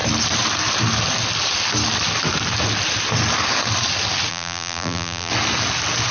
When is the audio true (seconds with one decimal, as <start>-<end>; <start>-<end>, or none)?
0.0-4.3; 5.3-6.1